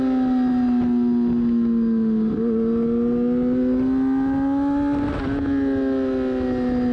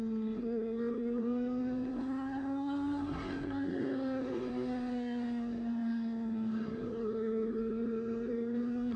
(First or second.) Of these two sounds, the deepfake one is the second